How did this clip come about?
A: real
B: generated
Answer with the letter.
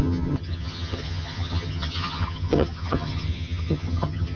B